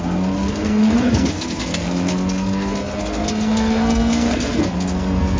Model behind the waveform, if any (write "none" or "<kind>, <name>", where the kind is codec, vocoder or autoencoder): codec, SNAC